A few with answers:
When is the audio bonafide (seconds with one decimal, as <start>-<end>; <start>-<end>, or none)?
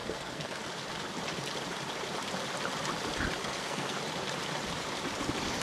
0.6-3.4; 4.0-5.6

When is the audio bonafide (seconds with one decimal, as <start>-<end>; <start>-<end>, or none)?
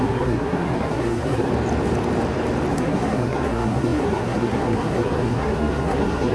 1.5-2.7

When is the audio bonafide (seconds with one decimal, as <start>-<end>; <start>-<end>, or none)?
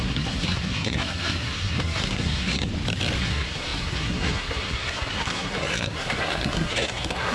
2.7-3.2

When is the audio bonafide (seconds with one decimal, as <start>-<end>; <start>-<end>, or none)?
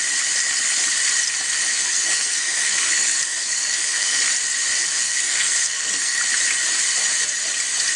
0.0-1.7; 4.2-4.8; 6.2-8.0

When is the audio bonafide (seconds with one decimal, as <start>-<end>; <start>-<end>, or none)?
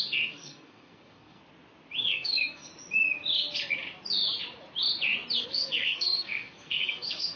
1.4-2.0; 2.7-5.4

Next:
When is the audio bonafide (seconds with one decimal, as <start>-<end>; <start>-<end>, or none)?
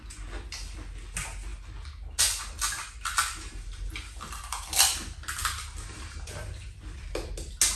0.0-7.8